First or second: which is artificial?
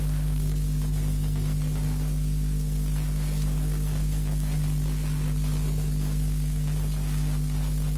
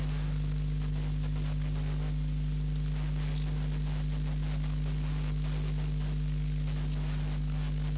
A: first